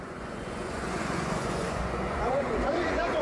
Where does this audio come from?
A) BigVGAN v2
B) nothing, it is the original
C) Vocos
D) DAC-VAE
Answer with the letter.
C